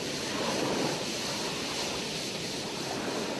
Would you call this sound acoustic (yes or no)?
yes